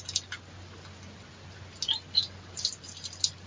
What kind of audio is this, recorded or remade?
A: recorded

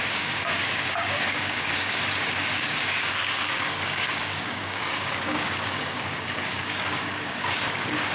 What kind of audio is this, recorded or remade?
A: remade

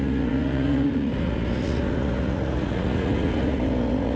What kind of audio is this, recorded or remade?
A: remade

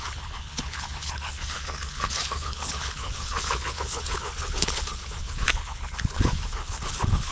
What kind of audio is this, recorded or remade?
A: remade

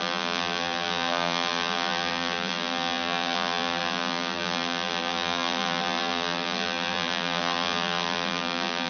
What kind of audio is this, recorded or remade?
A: remade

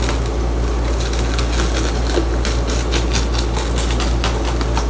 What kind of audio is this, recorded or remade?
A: recorded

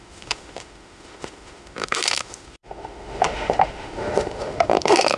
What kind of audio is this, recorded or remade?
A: remade